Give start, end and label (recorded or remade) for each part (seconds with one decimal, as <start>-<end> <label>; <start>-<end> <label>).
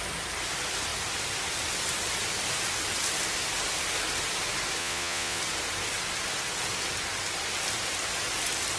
0.0-4.8 recorded; 4.8-5.4 remade; 5.4-8.8 recorded